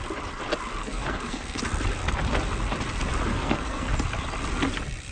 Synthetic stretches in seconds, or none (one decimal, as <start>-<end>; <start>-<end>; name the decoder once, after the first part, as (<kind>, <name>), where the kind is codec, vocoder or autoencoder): 0.8-1.6 (codec, SNAC); 3.3-3.9